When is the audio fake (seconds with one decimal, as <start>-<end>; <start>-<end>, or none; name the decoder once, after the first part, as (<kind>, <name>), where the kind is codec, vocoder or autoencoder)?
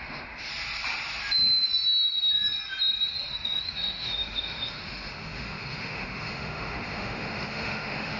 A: 0.0-0.5 (autoencoder, DAC-VAE); 3.6-8.2